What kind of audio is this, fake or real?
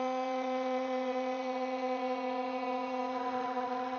fake